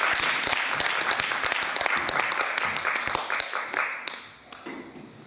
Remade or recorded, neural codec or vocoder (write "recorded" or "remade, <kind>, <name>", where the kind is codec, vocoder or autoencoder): recorded